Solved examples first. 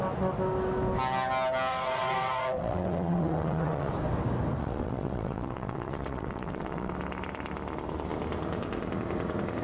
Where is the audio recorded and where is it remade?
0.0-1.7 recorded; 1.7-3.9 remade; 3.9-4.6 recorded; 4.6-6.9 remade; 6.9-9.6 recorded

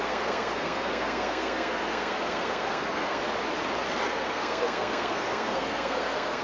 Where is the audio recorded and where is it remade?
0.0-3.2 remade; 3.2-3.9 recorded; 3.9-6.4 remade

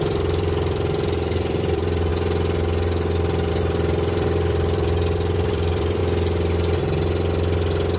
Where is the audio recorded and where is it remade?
0.0-2.1 remade; 2.1-3.5 recorded; 3.5-6.0 remade; 6.0-8.0 recorded

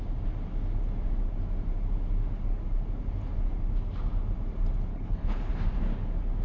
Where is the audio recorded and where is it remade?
0.0-4.9 recorded; 4.9-5.5 remade; 5.5-6.4 recorded

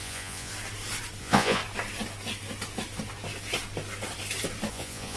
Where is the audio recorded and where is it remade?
0.0-0.5 remade; 0.5-1.2 recorded; 1.2-1.6 remade; 1.6-4.7 recorded; 4.7-5.2 remade